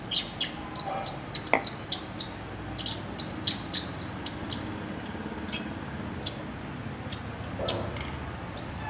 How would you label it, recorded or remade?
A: recorded